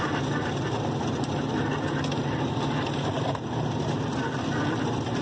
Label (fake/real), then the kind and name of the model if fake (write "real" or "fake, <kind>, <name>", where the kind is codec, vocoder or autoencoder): real